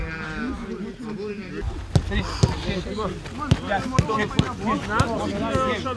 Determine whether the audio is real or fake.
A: real